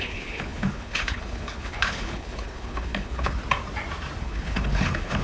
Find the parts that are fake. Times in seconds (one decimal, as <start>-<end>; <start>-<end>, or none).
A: 0.0-3.4; 4.2-5.2